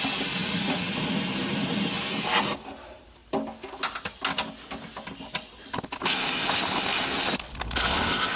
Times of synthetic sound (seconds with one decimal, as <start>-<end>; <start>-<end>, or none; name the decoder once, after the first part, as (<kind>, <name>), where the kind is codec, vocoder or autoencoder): 0.4-1.2 (vocoder, Vocos)